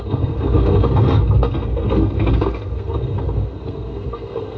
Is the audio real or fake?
fake